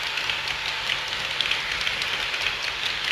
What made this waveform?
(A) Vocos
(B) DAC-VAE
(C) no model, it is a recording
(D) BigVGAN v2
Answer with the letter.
C